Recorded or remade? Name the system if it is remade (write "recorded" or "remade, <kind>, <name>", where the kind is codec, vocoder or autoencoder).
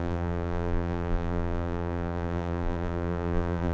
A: remade, vocoder, BigVGAN v2